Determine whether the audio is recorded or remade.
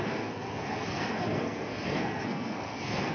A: remade